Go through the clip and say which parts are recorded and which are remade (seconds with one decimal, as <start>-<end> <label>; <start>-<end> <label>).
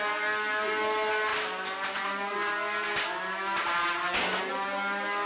0.0-5.3 recorded